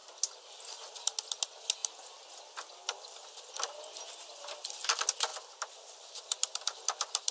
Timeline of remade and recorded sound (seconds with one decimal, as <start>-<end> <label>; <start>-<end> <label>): 0.0-0.9 remade; 0.9-1.8 recorded; 1.8-4.7 remade; 4.7-5.3 recorded; 5.3-7.3 remade